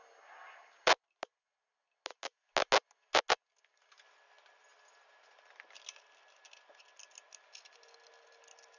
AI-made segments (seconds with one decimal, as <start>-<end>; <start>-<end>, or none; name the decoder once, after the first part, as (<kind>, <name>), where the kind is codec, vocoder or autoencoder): none